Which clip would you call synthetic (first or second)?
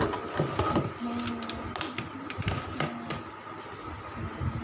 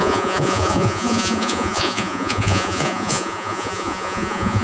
second